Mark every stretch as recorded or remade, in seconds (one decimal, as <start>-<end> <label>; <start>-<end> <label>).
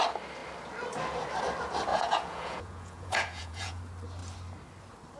0.0-1.9 recorded; 1.9-3.8 remade; 3.8-5.2 recorded